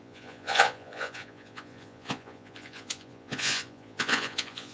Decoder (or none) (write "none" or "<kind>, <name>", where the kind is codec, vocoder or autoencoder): vocoder, Vocos